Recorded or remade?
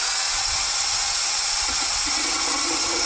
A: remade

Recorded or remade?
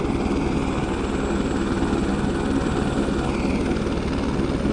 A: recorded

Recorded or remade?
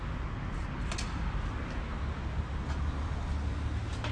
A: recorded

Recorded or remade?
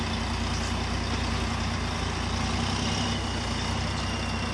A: recorded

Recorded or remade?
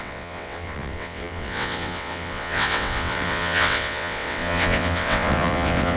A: remade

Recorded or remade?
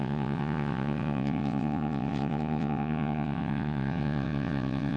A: remade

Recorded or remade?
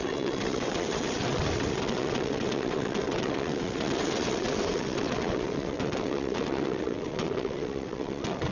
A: remade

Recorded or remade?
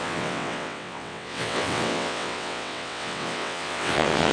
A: remade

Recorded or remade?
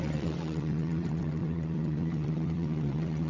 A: remade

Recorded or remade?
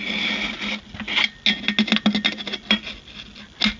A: recorded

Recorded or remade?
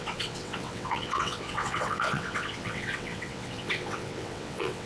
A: remade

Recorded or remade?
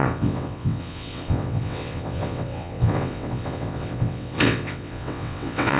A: remade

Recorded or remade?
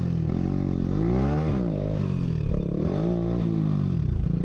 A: recorded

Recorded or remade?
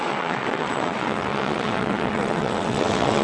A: remade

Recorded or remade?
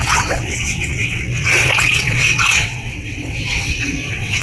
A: remade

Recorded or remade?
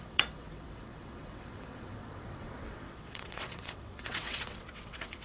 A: remade